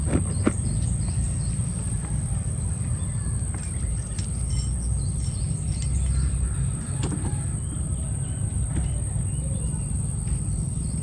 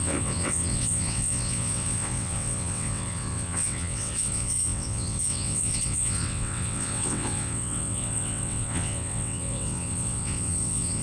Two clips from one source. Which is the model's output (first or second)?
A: second